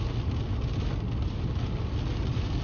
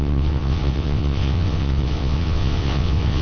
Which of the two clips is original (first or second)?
first